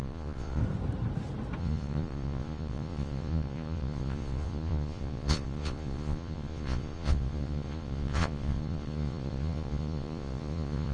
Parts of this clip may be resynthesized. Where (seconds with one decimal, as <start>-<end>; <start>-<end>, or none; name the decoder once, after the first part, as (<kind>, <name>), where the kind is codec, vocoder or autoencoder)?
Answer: 0.0-0.6 (vocoder, Vocos); 1.6-10.9